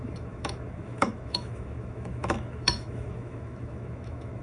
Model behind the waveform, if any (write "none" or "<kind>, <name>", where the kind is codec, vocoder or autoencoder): autoencoder, DAC-VAE